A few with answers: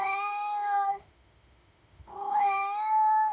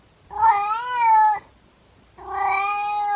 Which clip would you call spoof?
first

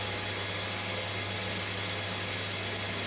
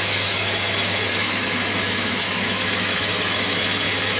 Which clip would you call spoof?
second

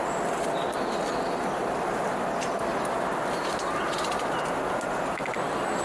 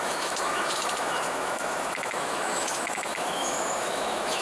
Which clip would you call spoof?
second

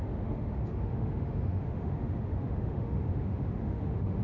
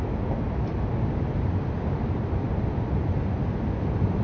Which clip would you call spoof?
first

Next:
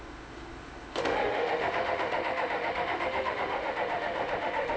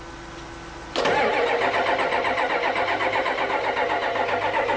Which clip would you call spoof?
first